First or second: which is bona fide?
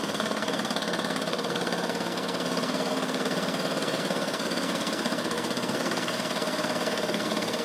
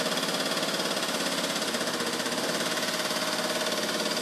second